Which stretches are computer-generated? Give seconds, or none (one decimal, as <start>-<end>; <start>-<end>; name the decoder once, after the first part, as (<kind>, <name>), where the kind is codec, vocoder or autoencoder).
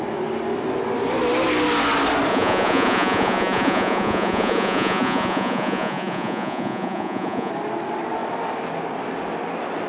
2.3-7.5 (vocoder, Vocos)